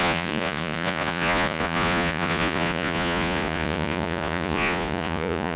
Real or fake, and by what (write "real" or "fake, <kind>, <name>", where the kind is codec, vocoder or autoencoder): fake, vocoder, Vocos